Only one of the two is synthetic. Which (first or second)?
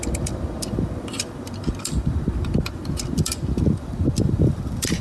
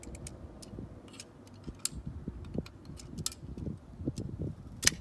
first